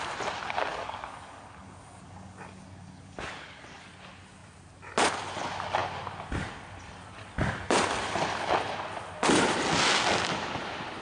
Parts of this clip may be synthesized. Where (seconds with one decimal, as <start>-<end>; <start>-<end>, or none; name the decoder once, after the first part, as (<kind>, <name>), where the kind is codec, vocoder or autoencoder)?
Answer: 0.7-3.9 (codec, DAC)